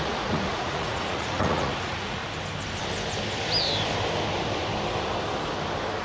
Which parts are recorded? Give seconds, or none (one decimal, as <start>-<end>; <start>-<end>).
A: 2.2-6.0